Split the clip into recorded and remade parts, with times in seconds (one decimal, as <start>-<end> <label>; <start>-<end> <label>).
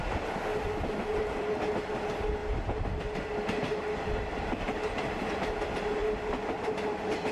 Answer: 0.0-0.5 recorded; 0.5-1.6 remade; 1.6-6.0 recorded; 6.0-6.7 remade; 6.7-7.3 recorded